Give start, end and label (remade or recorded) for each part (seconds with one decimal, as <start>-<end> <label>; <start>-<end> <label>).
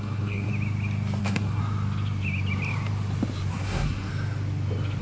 0.0-0.5 remade; 0.5-1.2 recorded; 1.2-1.6 remade; 1.6-3.5 recorded; 3.5-4.1 remade; 4.1-5.0 recorded